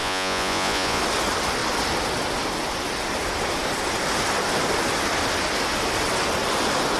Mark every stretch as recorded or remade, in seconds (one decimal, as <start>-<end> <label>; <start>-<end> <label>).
0.0-1.0 remade; 1.0-7.0 recorded